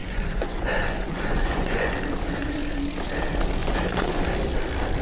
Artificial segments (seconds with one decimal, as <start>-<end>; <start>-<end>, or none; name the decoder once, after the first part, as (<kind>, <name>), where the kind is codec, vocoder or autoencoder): 0.0-1.9 (vocoder, Vocos); 3.6-4.2